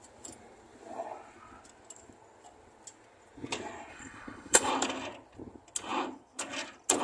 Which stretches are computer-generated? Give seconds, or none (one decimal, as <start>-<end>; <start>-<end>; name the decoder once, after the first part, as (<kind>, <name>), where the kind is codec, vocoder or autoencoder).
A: 3.9-4.7 (codec, HILCodec)